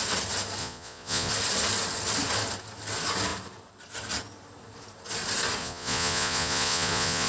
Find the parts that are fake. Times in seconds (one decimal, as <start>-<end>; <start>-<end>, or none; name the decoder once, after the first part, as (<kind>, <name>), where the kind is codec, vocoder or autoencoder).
0.6-1.3 (vocoder, Vocos); 5.6-7.3